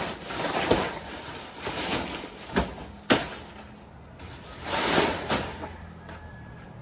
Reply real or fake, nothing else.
real